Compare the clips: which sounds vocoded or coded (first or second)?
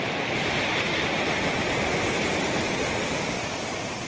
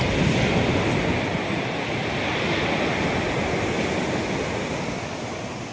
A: first